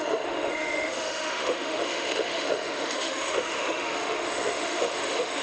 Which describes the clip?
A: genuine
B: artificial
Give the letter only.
B